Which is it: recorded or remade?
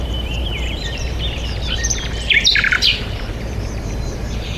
remade